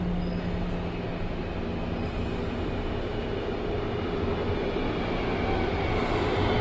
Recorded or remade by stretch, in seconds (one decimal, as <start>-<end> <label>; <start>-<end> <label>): 0.0-6.6 recorded